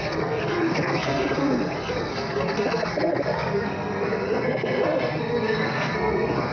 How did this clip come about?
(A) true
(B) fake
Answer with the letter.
B